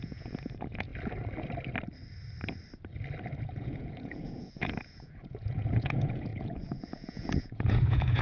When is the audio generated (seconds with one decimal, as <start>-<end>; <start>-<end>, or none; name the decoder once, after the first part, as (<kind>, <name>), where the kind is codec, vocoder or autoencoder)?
0.0-0.9 (vocoder, Vocos); 3.4-8.2